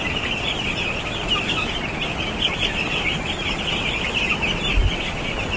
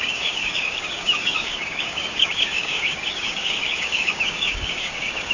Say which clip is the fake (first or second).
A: second